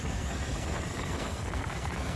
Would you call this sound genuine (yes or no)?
no